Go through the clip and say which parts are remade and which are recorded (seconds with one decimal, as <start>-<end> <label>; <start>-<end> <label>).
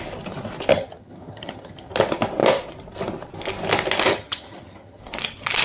0.0-0.7 recorded; 0.7-1.9 remade; 1.9-4.1 recorded; 4.1-5.0 remade; 5.0-5.6 recorded